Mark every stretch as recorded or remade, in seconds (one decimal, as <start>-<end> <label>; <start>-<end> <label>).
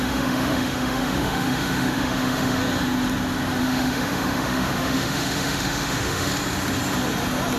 0.0-2.6 remade; 2.6-3.6 recorded; 3.6-6.3 remade; 6.3-7.6 recorded